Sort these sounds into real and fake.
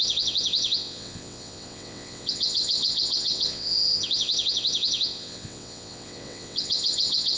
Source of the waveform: fake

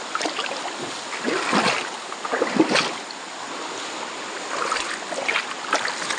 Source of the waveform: real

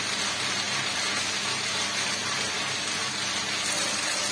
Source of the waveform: real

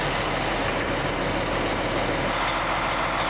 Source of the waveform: real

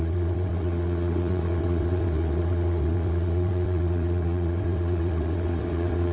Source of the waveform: fake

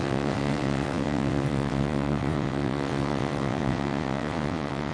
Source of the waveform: fake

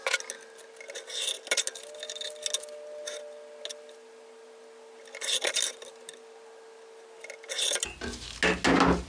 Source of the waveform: real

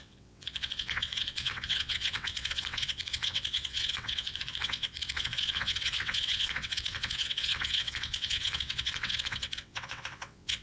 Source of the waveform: fake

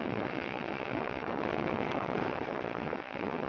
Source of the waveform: fake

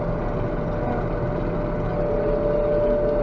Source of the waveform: real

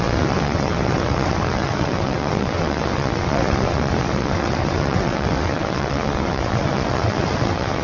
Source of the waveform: fake